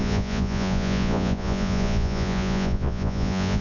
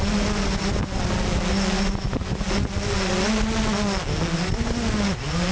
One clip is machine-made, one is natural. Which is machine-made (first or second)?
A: first